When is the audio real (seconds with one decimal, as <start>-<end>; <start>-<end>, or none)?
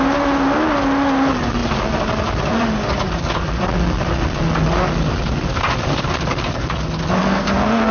0.0-7.2